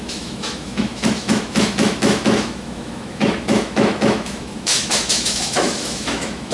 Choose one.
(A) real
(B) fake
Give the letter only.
B